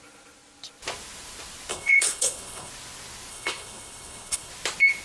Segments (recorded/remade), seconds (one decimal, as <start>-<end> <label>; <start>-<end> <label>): 0.0-1.7 recorded; 1.7-2.7 remade; 2.7-3.3 recorded; 3.3-4.5 remade; 4.5-5.0 recorded